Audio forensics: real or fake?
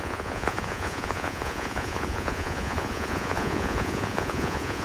fake